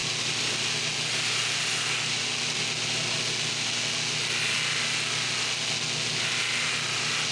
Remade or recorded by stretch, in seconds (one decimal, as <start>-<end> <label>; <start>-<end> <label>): 0.0-7.3 recorded